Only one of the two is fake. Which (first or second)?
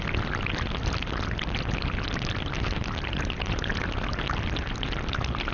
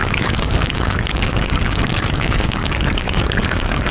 second